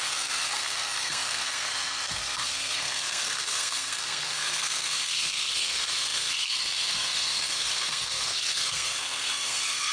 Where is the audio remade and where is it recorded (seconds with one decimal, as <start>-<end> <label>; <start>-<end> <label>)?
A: 0.0-9.9 remade